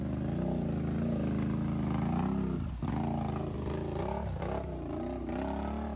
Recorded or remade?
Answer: recorded